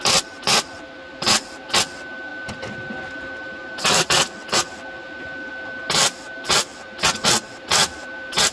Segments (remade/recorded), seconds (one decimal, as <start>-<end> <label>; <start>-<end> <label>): 0.0-8.5 recorded